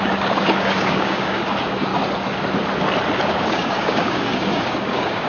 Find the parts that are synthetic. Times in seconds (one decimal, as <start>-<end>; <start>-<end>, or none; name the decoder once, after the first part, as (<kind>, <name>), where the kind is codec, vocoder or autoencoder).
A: 0.0-1.9 (codec, DAC); 3.3-5.3